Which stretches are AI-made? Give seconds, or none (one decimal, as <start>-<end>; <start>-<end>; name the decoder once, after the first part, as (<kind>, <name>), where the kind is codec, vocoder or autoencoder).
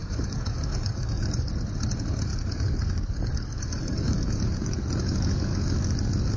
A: 0.0-1.5 (codec, DAC); 2.3-6.4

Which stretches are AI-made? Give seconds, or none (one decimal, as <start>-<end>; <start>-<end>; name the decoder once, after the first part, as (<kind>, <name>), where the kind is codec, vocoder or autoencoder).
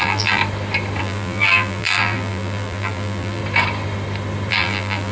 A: 0.0-0.4 (vocoder, BigVGAN v2); 1.0-3.4; 4.5-5.1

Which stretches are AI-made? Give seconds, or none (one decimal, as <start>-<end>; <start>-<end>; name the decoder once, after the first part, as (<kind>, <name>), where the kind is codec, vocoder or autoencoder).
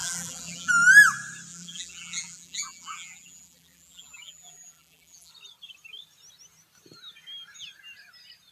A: 0.0-0.7 (vocoder, BigVGAN v2); 1.5-5.3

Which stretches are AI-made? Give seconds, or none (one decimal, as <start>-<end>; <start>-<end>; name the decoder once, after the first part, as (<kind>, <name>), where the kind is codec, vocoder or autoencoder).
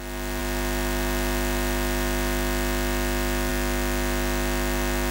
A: none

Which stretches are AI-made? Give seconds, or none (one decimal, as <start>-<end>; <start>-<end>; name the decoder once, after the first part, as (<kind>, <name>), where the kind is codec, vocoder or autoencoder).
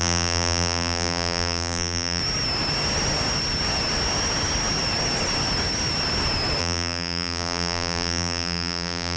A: 0.0-2.2 (vocoder, BigVGAN v2); 6.6-9.2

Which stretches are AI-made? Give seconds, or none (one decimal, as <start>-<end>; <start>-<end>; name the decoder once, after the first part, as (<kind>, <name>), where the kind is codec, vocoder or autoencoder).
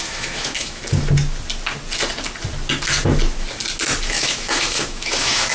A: 0.0-0.8 (autoencoder, DAC-VAE); 4.1-5.5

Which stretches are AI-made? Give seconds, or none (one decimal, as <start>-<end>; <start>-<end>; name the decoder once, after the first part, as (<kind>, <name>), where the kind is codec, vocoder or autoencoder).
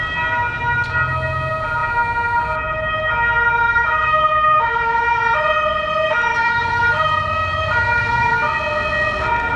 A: 3.6-5.2 (autoencoder, DAC-VAE); 6.3-8.3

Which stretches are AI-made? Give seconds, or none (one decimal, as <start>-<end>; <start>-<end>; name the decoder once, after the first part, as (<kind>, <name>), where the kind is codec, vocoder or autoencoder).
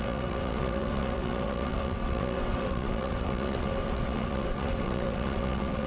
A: 0.0-5.9 (vocoder, WaveNeXt)